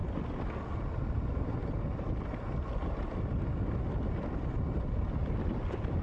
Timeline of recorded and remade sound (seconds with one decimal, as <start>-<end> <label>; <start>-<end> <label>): 0.0-6.0 recorded